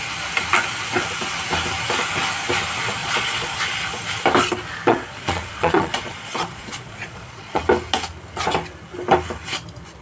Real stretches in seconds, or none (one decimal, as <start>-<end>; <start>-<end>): 0.0-3.0; 3.6-4.9; 7.6-10.0